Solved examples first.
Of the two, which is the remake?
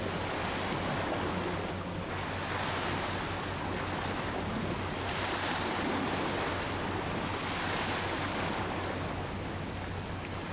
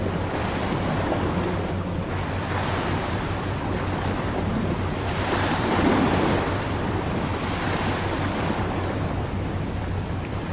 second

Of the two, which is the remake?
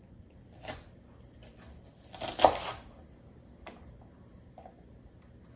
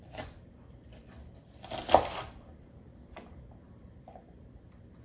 second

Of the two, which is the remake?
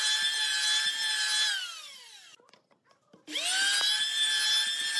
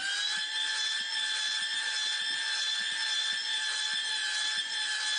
second